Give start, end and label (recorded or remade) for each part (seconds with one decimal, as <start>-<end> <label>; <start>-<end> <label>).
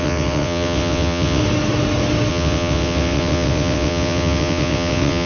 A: 0.0-1.4 remade; 1.4-2.3 recorded; 2.3-5.3 remade